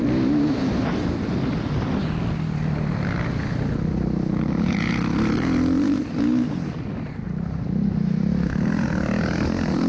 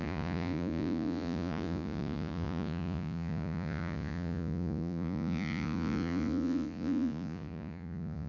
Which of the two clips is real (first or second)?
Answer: first